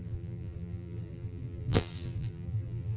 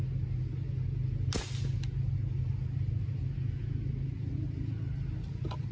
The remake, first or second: first